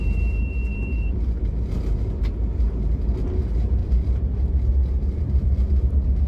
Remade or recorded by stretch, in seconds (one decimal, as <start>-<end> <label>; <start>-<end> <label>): 0.0-6.3 remade